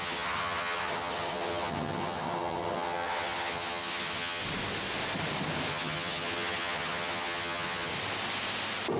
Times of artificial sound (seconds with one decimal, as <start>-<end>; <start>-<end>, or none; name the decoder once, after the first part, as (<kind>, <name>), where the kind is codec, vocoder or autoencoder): 0.0-4.4 (vocoder, HiFi-GAN); 5.7-7.9